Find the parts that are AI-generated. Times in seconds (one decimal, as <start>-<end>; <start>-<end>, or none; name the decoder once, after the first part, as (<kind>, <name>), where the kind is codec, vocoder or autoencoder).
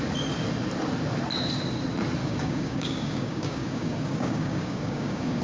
2.2-5.4 (codec, DAC)